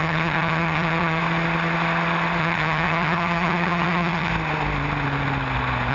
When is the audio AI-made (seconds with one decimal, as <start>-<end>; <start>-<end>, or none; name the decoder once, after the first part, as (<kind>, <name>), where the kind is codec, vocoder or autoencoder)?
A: 0.0-1.2 (vocoder, HiFi-GAN); 2.4-4.3

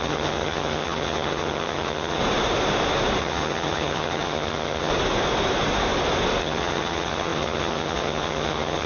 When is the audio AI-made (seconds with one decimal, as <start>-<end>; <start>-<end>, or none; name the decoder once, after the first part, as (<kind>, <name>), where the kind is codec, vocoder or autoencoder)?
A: 0.0-2.2 (vocoder, HiFi-GAN); 3.2-4.9; 6.4-8.9